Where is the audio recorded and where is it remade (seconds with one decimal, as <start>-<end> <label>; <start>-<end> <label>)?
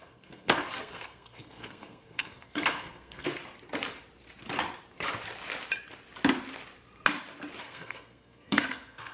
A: 0.0-3.4 remade; 3.4-7.6 recorded; 7.6-9.1 remade